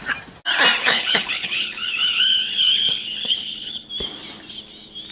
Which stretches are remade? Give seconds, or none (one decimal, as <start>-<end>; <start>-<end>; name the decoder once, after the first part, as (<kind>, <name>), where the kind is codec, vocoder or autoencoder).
0.8-3.9 (codec, HILCodec)